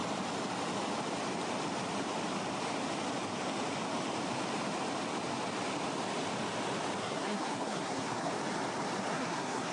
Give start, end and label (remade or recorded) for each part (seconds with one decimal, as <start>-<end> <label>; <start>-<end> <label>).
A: 0.0-7.0 recorded; 7.0-8.3 remade; 8.3-9.1 recorded; 9.1-9.7 remade